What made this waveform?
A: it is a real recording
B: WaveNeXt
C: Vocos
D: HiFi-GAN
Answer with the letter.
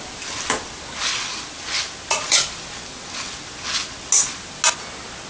A